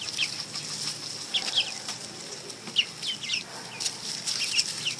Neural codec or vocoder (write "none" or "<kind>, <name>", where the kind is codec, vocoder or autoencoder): none